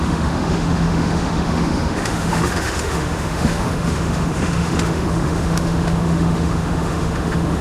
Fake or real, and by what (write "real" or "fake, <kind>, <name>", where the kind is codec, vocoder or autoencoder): fake, autoencoder, DAC-VAE